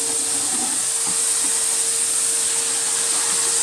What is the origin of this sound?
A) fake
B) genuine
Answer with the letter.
B